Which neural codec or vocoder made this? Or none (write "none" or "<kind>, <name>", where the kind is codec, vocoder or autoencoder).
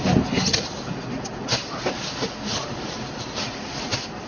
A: none